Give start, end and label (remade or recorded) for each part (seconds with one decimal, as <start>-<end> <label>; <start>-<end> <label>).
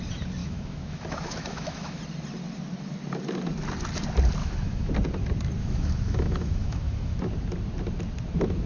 0.0-0.4 recorded; 0.4-2.0 remade; 2.0-4.4 recorded; 4.4-4.9 remade; 4.9-5.6 recorded; 5.6-7.2 remade; 7.2-8.7 recorded